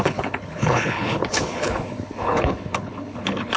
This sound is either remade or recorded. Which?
remade